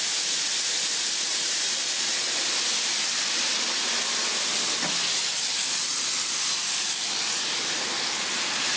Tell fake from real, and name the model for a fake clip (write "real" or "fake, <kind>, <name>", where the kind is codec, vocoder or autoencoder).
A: real